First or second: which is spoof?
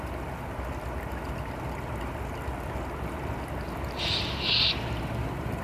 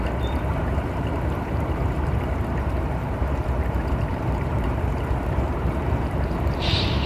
second